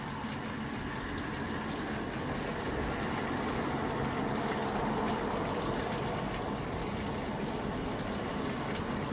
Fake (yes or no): no